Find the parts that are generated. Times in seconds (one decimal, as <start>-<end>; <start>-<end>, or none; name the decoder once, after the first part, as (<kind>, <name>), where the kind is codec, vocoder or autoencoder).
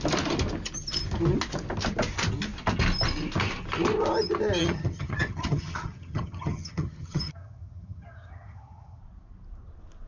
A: 4.6-9.0 (vocoder, HiFi-GAN)